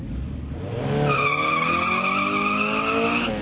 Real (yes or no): yes